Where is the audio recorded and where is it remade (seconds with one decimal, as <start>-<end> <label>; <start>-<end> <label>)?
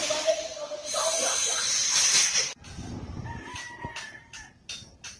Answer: 0.0-3.1 remade; 3.1-3.5 recorded; 3.5-4.3 remade; 4.3-5.2 recorded